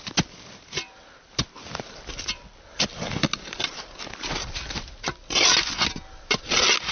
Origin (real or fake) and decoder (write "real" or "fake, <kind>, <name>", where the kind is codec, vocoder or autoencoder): real